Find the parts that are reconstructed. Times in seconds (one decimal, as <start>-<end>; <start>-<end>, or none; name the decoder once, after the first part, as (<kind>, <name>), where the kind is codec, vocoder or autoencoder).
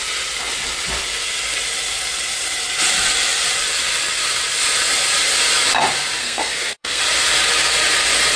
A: 6.2-7.0 (codec, SNAC)